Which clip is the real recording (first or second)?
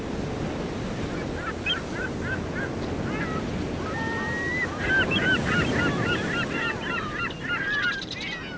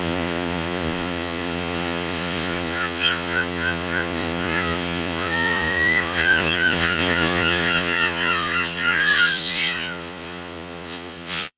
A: first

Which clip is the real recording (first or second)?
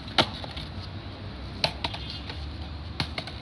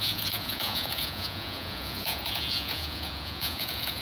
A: first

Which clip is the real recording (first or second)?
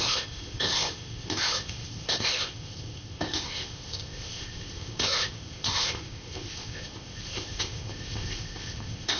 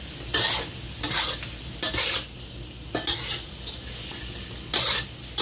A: second